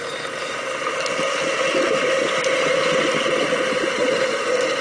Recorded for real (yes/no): yes